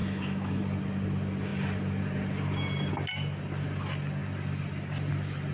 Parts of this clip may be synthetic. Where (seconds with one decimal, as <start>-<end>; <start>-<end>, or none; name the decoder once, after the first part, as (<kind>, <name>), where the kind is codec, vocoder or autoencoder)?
0.0-0.6 (autoencoder, DAC-VAE)